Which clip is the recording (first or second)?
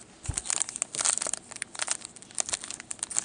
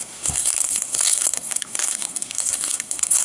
first